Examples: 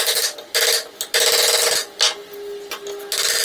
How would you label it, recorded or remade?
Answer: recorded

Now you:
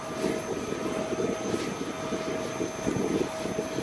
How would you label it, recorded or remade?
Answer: recorded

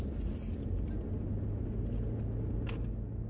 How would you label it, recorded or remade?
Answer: recorded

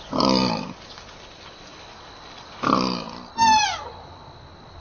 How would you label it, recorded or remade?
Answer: recorded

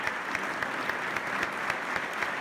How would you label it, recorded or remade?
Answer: recorded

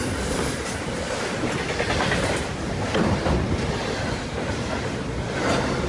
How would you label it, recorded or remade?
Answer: recorded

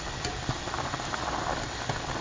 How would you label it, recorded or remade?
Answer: remade